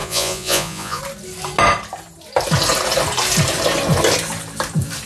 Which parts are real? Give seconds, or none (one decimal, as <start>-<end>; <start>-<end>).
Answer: 1.0-5.1

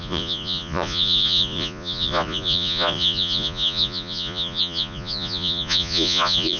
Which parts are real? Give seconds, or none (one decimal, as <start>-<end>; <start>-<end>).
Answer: none